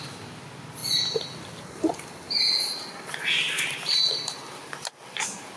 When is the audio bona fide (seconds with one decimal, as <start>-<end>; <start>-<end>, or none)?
0.0-5.6